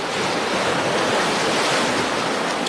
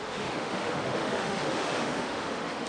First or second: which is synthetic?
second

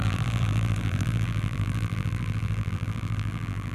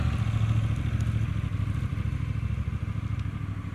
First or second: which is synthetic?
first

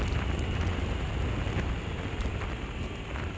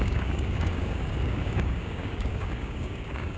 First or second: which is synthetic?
second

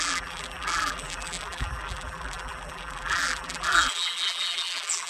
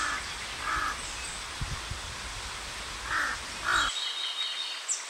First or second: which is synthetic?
first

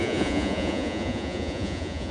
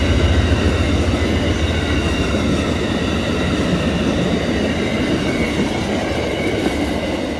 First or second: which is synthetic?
first